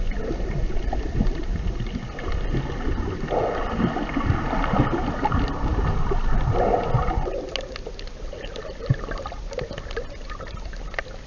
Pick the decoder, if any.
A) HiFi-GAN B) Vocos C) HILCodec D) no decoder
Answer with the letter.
D